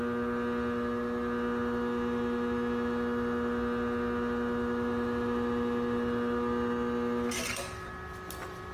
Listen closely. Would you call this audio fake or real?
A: real